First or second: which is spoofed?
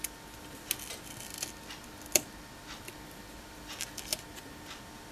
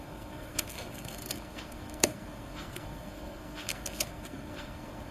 second